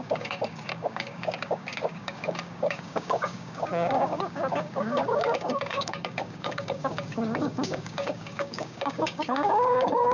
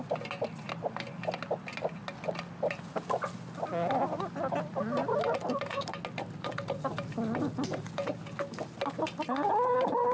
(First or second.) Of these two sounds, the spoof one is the first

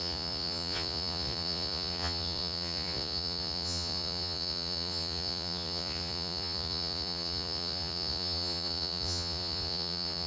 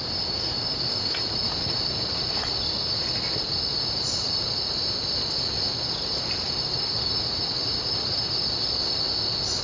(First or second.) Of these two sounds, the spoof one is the first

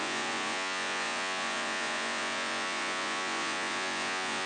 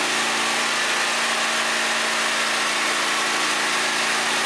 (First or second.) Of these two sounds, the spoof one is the first